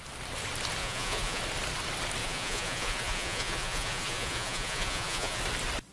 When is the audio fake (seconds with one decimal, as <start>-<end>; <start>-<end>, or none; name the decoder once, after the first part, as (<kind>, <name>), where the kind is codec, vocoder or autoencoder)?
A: 0.8-1.4 (vocoder, Vocos); 2.2-5.4